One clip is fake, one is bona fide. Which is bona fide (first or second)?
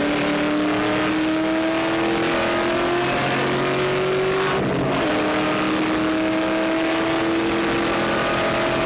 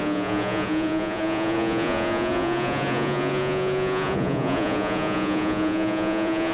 first